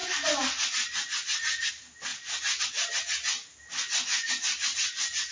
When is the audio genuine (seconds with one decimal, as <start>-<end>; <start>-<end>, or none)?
0.0-5.3